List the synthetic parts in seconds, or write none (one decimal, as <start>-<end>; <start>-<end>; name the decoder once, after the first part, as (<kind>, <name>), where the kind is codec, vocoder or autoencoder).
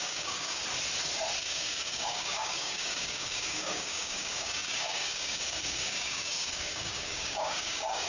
0.0-0.6 (codec, DAC); 1.4-8.1